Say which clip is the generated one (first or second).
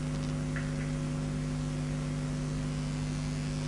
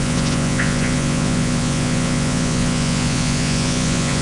second